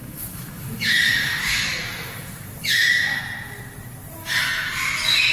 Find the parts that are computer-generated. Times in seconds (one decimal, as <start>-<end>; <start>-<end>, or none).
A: 0.0-3.2